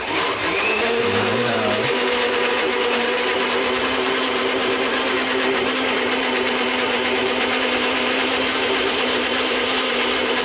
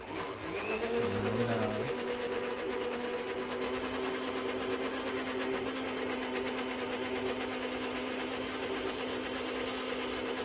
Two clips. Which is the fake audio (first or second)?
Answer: first